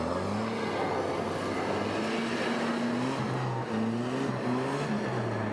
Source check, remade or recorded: recorded